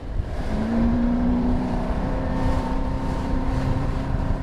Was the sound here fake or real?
fake